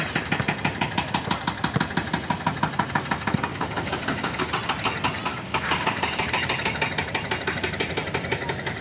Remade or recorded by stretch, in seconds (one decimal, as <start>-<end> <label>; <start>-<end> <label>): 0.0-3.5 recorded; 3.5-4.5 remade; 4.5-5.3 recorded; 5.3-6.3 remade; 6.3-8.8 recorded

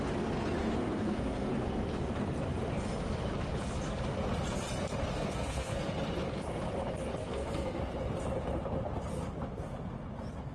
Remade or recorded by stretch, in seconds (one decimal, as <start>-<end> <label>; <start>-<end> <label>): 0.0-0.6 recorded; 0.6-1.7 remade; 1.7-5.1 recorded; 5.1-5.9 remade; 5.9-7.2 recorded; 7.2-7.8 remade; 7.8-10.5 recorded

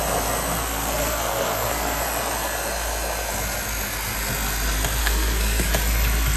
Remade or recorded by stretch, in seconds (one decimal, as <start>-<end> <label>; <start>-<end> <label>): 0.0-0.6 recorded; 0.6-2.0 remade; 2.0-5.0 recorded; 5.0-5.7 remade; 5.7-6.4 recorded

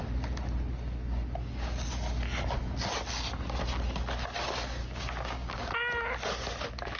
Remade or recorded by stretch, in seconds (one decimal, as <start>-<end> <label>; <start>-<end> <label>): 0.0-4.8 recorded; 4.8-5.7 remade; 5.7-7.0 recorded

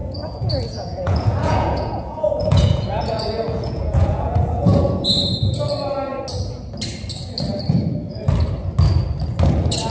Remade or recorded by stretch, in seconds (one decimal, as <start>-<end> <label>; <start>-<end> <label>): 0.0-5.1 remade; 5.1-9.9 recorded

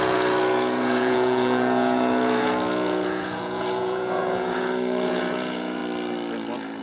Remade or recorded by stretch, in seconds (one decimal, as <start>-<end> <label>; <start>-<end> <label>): 0.0-5.8 remade; 5.8-6.8 recorded

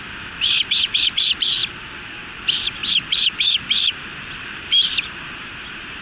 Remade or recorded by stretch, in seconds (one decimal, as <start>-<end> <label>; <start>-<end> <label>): 0.0-1.6 remade; 1.6-2.4 recorded; 2.4-6.0 remade

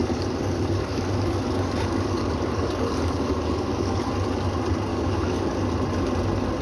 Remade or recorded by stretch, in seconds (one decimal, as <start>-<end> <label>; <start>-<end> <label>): 0.0-4.0 remade; 4.0-4.9 recorded; 4.9-5.6 remade; 5.6-6.6 recorded